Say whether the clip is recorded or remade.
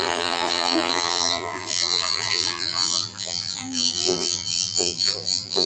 remade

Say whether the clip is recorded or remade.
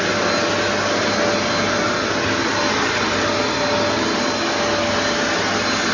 recorded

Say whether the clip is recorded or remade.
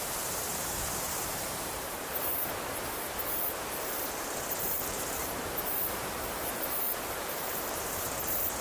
remade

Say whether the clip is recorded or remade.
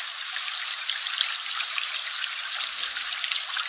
recorded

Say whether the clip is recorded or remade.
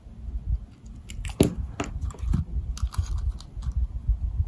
recorded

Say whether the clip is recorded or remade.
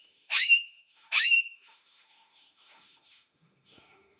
remade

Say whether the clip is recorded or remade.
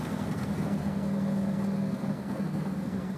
remade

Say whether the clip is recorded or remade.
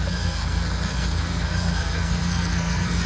remade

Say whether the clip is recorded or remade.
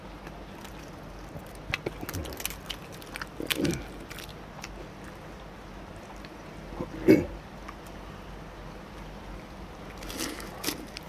recorded